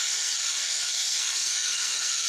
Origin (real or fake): fake